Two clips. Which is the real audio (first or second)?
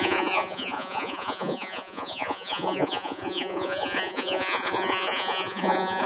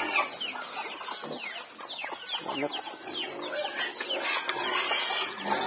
second